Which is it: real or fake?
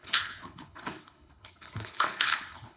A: fake